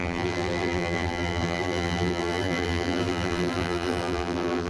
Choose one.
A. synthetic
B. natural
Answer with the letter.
A